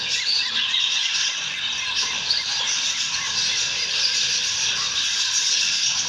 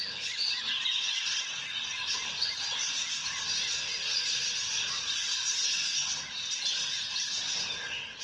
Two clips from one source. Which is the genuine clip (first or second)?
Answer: second